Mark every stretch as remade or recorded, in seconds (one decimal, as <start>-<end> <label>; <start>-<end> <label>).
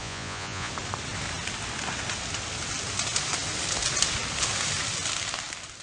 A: 0.0-0.7 remade; 0.7-5.8 recorded